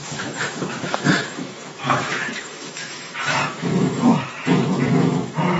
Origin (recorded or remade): remade